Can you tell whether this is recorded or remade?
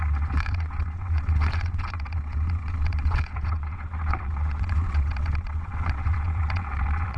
remade